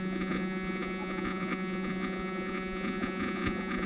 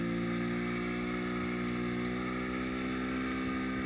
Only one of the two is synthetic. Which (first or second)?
first